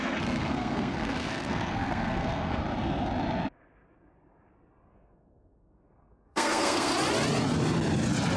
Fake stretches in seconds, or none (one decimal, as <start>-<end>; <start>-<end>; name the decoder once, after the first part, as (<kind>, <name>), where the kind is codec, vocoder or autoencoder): 0.0-2.6 (codec, SNAC); 4.9-6.9